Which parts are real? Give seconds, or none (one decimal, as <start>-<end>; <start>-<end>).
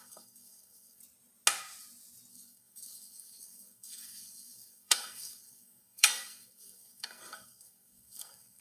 1.0-2.3